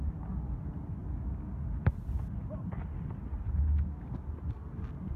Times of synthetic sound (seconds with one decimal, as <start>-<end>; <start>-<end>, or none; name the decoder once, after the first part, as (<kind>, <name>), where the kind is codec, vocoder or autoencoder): none